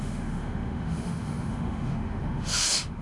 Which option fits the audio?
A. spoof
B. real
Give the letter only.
A